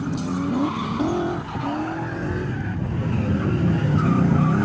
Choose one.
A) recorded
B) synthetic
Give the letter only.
A